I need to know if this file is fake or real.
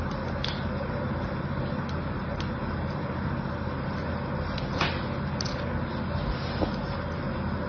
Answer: real